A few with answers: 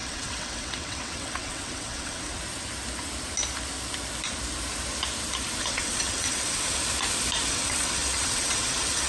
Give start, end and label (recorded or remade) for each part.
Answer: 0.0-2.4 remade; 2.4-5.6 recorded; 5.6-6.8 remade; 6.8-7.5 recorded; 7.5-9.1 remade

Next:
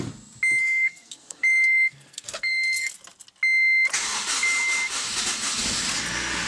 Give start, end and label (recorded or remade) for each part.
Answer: 0.0-0.6 recorded; 0.6-3.0 remade; 3.0-6.5 recorded

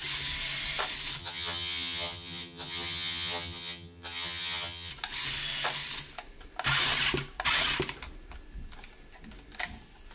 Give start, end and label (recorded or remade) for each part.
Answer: 0.0-1.2 recorded; 1.2-4.9 remade; 4.9-10.1 recorded

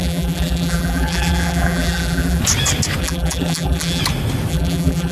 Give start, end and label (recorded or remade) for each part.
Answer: 0.0-2.4 remade; 2.4-3.0 recorded; 3.0-4.0 remade; 4.0-4.5 recorded; 4.5-5.1 remade

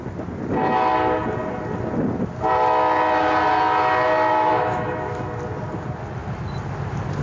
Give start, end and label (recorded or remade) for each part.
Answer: 0.0-4.3 recorded; 4.3-5.2 remade; 5.2-7.2 recorded

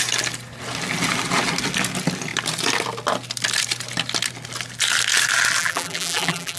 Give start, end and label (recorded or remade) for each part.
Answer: 0.0-5.6 recorded; 5.6-6.6 remade

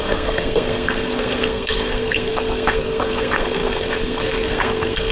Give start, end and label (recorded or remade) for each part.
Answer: 0.0-5.1 remade

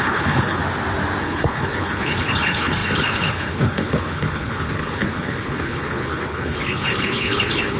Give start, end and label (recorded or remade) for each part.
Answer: 0.0-0.6 remade; 0.6-1.2 recorded; 1.2-7.8 remade